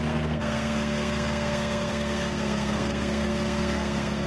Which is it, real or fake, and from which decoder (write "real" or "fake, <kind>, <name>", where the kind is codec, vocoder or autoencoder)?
fake, codec, SNAC